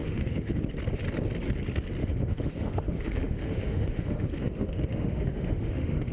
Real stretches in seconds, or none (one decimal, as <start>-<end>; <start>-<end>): 0.6-2.0